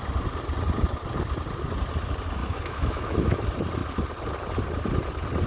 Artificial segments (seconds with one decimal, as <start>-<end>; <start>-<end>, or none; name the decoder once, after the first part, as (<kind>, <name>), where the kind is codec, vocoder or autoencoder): 2.4-3.4 (autoencoder, DAC-VAE)